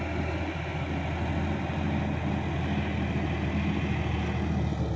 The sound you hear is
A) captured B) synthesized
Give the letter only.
A